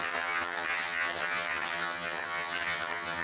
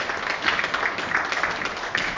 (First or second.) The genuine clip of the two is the second